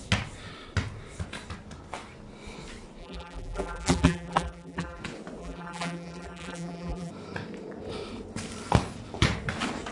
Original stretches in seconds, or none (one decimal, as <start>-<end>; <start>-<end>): 0.0-3.0; 5.0-5.4; 7.1-9.9